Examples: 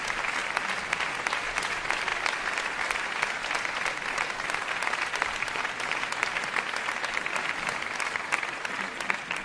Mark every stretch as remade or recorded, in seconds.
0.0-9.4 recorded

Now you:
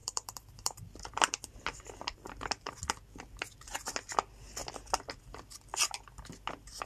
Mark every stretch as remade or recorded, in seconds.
0.0-2.8 remade; 2.8-6.9 recorded

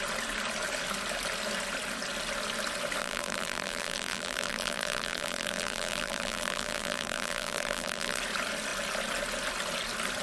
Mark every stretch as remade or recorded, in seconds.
0.0-3.0 recorded; 3.0-8.2 remade; 8.2-10.2 recorded

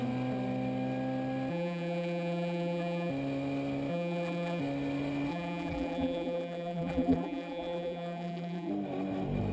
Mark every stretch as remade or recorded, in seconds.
0.0-1.5 recorded; 1.5-3.1 remade; 3.1-3.9 recorded; 3.9-4.6 remade; 4.6-5.3 recorded; 5.3-8.7 remade; 8.7-9.5 recorded

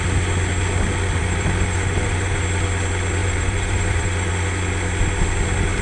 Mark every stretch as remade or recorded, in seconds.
0.0-1.2 recorded; 1.2-2.4 remade; 2.4-3.2 recorded; 3.2-4.3 remade; 4.3-5.8 recorded